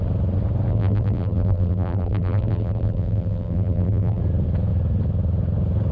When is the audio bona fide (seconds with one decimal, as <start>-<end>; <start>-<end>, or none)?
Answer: 0.0-0.7; 4.2-5.9